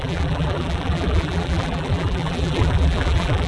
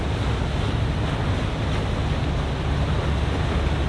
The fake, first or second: first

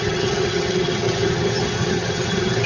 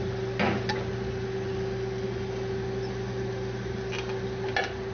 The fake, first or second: first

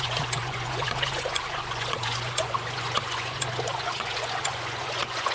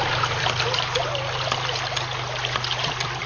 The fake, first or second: first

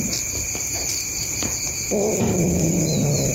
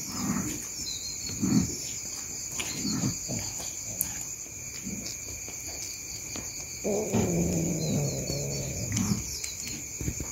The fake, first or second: first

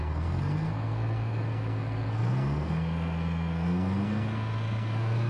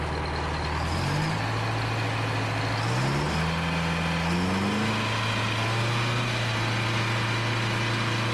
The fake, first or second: first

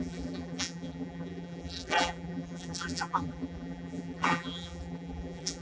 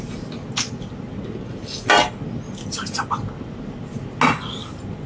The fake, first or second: first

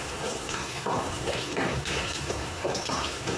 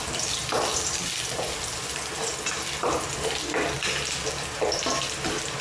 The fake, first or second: first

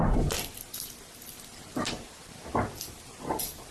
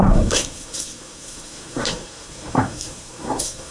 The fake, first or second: second